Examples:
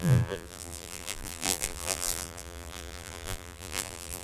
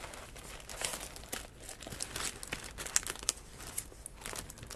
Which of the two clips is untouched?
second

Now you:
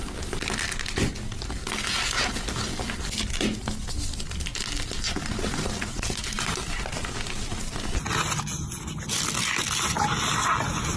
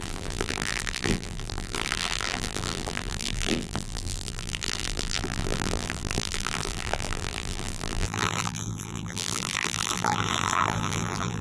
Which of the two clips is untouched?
first